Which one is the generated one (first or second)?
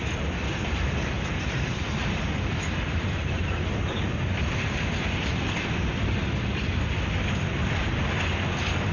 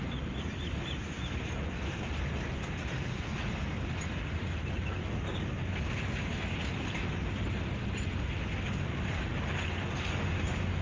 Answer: first